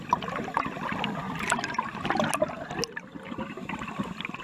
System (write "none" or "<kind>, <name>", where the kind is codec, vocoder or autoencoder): none